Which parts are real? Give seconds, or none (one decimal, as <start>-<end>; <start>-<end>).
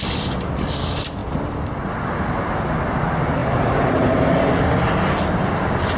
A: 0.0-1.2; 1.9-3.4; 4.4-6.0